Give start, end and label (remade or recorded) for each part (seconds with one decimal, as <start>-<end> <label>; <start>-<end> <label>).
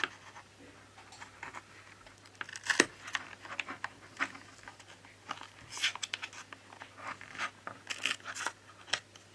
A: 0.0-9.3 recorded